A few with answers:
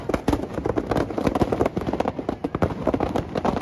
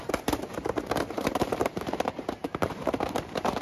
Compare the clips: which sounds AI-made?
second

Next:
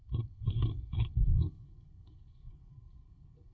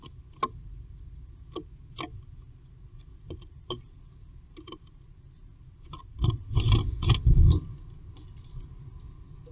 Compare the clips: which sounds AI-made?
first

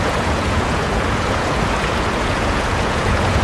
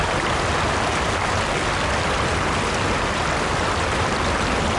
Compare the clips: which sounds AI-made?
first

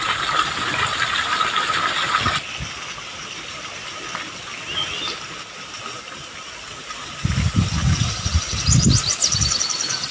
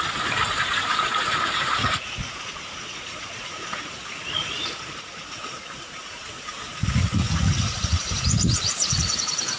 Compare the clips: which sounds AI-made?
second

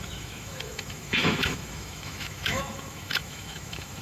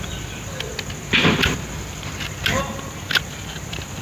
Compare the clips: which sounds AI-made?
first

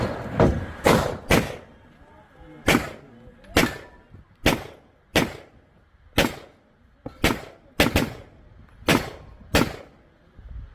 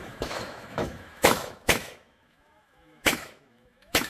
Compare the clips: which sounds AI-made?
second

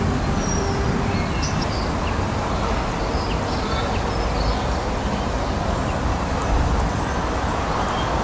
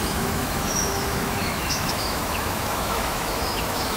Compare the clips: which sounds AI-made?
second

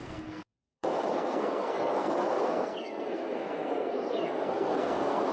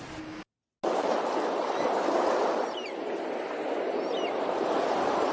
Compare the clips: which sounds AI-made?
first